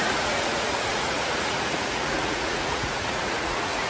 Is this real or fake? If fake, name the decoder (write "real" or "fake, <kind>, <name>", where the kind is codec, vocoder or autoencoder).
fake, vocoder, Vocos